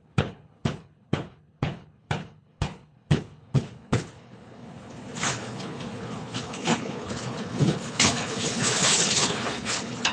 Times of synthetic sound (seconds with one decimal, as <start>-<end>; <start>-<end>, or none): 0.0-10.1